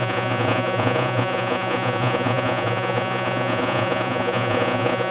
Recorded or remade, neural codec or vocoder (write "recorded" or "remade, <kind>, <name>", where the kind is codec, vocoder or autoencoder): remade, vocoder, Vocos